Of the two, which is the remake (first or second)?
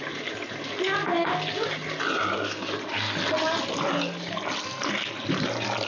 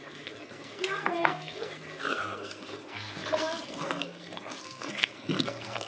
second